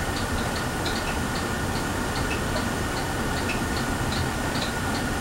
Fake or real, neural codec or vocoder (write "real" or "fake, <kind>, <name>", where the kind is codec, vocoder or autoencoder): real